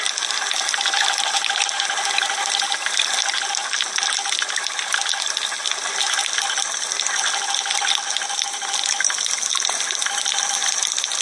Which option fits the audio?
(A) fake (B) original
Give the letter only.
B